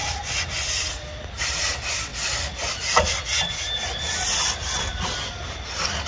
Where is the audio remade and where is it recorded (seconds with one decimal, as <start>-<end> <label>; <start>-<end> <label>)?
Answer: 0.0-6.1 recorded

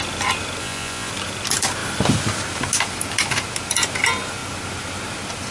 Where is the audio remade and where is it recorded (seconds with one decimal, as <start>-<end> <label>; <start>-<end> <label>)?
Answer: 0.0-0.6 recorded; 0.6-1.1 remade; 1.1-5.5 recorded